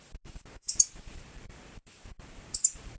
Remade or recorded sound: remade